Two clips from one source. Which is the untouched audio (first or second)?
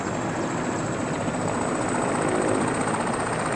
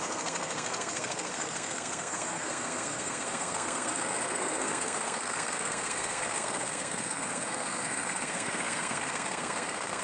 first